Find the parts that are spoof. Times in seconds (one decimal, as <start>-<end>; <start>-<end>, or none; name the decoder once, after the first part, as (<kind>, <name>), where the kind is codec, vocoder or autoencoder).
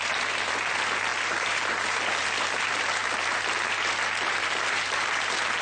none